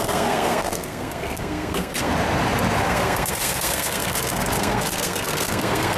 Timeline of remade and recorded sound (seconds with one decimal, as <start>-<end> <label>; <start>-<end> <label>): 0.0-2.1 remade; 2.1-2.9 recorded; 2.9-6.0 remade